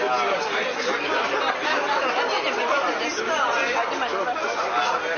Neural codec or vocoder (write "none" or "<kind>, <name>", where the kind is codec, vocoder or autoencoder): none